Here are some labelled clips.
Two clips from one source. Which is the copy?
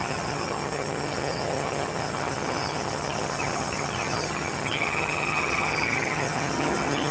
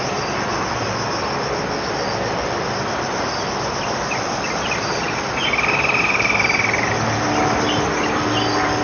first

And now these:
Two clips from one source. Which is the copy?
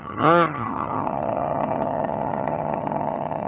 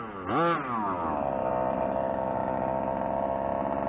first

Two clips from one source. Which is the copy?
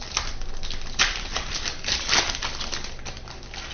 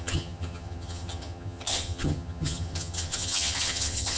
second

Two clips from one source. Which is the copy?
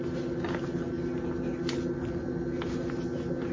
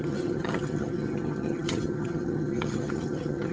second